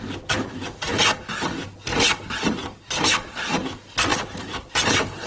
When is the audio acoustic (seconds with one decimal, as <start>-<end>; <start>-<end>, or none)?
0.0-4.1

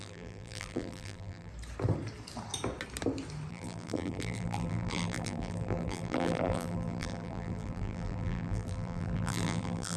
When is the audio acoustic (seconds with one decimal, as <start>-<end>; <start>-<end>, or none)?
1.5-3.5

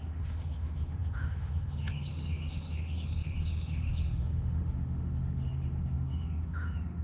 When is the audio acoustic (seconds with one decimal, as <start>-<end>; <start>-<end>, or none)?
none